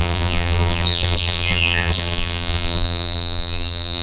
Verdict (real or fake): fake